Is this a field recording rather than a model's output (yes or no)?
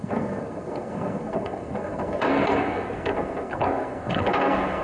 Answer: no